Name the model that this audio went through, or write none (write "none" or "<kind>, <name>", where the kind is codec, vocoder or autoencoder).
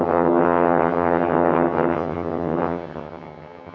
vocoder, HiFi-GAN